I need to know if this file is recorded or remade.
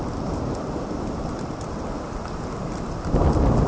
remade